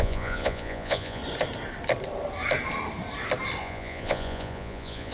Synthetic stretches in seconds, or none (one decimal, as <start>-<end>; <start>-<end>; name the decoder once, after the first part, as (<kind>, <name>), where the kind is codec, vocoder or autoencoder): 0.0-1.2 (vocoder, Vocos); 3.6-5.1